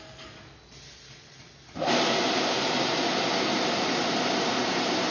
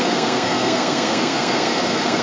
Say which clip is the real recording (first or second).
first